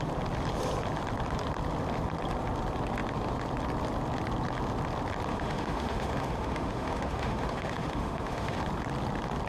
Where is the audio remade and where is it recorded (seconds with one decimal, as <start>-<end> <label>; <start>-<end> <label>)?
0.0-5.3 recorded; 5.3-8.6 remade; 8.6-9.5 recorded